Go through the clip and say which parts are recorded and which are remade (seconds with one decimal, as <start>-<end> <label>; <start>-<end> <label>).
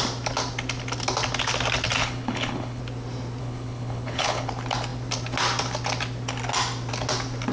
0.0-2.0 recorded; 2.0-2.8 remade; 2.8-3.4 recorded; 3.4-4.5 remade; 4.5-7.5 recorded